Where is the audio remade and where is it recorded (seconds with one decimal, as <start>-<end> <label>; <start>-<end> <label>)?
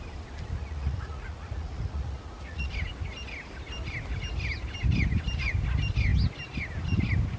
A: 0.0-0.6 recorded; 0.6-2.7 remade; 2.7-7.4 recorded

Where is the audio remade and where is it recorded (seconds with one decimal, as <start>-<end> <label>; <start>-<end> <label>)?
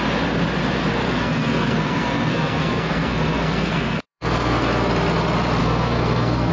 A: 0.0-1.0 recorded; 1.0-4.9 remade; 4.9-5.6 recorded; 5.6-6.5 remade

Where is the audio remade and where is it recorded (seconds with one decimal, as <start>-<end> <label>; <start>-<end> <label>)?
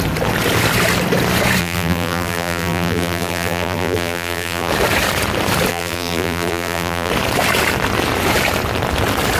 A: 0.0-1.6 recorded; 1.6-4.7 remade; 4.7-5.7 recorded; 5.7-7.1 remade; 7.1-9.4 recorded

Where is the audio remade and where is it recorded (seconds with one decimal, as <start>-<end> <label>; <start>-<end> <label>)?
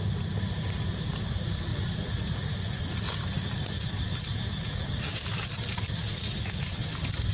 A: 0.0-1.7 recorded; 1.7-3.1 remade; 3.1-4.6 recorded; 4.6-5.1 remade; 5.1-6.0 recorded; 6.0-6.6 remade; 6.6-7.3 recorded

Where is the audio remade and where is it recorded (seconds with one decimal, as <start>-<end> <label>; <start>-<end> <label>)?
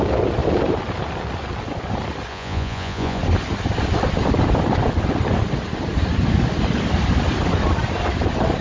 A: 0.0-2.3 recorded; 2.3-3.2 remade; 3.2-8.6 recorded